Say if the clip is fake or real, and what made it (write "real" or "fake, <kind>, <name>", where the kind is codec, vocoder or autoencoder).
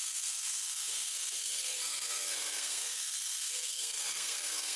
fake, codec, SNAC